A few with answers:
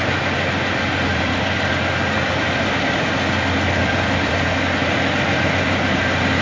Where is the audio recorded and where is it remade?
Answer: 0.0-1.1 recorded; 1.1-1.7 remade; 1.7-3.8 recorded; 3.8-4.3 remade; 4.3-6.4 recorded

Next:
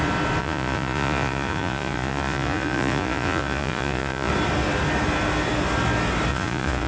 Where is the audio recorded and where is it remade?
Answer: 0.0-0.4 recorded; 0.4-4.3 remade; 4.3-6.3 recorded; 6.3-6.9 remade

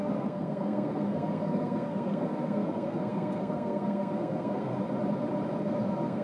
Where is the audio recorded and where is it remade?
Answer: 0.0-4.8 remade; 4.8-5.6 recorded; 5.6-6.2 remade